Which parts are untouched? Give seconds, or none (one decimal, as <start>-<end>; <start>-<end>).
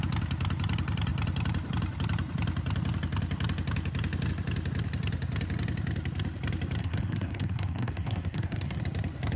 0.0-6.8; 8.8-9.4